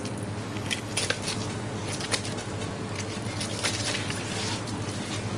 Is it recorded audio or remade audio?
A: recorded